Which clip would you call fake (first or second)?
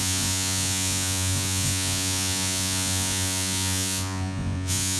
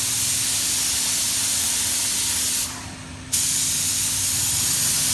first